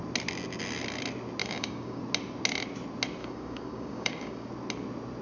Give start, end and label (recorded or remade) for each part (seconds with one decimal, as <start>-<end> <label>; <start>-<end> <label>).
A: 0.0-1.4 recorded; 1.4-2.0 remade; 2.0-3.2 recorded; 3.2-4.5 remade; 4.5-5.2 recorded